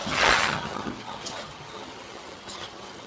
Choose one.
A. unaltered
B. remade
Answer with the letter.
B